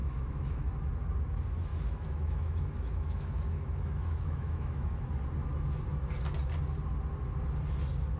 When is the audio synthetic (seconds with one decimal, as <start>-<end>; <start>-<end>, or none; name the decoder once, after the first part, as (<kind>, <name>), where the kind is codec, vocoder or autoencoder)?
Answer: 0.0-0.7 (autoencoder, DAC-VAE); 1.7-5.0